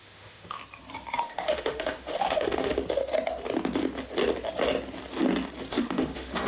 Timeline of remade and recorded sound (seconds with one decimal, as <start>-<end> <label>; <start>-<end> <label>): 0.0-0.6 remade; 0.6-1.2 recorded; 1.2-2.8 remade; 2.8-5.7 recorded; 5.7-6.5 remade